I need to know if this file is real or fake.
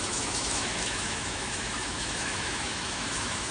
fake